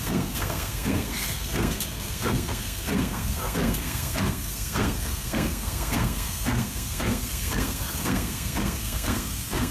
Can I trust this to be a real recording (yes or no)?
no